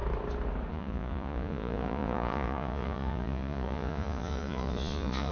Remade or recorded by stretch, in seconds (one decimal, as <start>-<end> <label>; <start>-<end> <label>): 0.0-0.7 recorded; 0.7-5.3 remade